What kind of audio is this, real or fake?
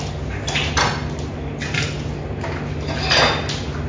real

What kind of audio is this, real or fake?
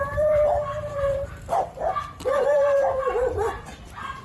fake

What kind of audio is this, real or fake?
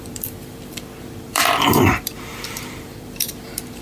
fake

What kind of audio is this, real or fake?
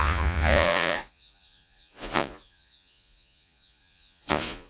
fake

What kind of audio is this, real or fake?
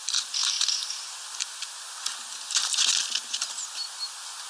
real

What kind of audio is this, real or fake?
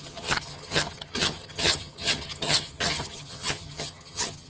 fake